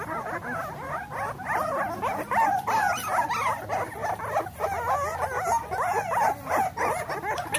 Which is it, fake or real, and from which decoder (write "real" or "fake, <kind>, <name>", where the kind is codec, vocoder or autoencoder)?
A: real